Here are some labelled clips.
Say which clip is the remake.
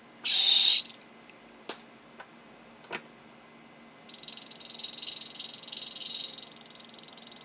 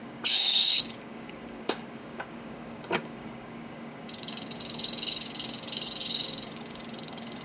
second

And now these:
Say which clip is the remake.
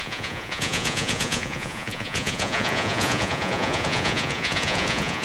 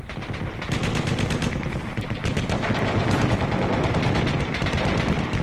first